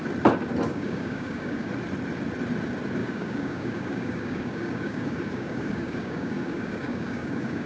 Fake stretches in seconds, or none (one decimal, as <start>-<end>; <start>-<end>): 0.7-1.7; 3.0-7.7